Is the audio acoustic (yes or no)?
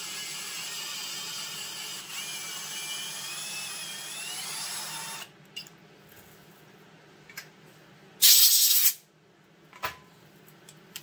yes